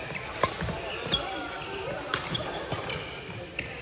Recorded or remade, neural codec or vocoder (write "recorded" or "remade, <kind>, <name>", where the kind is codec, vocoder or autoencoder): recorded